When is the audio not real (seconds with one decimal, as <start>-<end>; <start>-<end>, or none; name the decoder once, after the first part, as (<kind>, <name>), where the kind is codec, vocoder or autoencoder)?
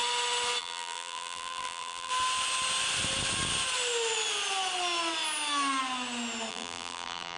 0.6-2.1 (vocoder, BigVGAN v2); 6.5-7.4